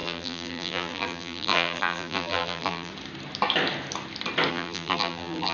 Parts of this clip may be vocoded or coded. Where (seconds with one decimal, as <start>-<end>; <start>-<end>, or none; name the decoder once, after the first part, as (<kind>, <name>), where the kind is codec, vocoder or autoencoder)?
0.0-2.9 (vocoder, BigVGAN v2); 4.5-5.5